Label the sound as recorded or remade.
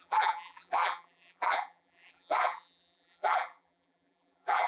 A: remade